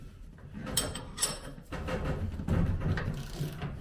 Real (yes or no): no